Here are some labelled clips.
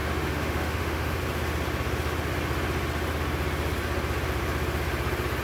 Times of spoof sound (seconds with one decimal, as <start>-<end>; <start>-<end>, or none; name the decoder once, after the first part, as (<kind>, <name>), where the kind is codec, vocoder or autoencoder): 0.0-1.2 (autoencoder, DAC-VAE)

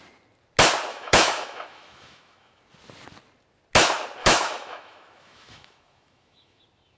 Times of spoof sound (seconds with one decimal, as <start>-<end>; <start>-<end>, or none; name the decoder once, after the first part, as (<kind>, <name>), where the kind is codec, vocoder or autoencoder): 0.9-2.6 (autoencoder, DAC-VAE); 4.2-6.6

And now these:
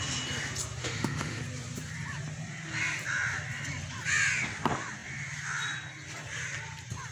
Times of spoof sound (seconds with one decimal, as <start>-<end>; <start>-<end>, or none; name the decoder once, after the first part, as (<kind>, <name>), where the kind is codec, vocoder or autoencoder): 0.8-1.4 (autoencoder, DAC-VAE)

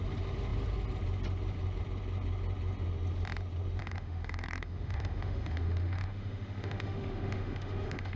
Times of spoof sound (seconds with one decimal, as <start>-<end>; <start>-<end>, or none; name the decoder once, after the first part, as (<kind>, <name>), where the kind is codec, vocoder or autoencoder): 3.8-8.2 (autoencoder, DAC-VAE)